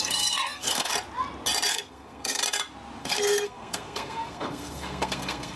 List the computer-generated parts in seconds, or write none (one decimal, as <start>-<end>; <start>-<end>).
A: 0.0-0.9; 1.7-2.4; 3.0-5.6